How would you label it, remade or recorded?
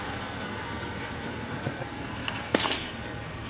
remade